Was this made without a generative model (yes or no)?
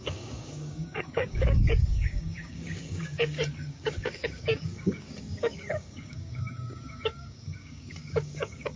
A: no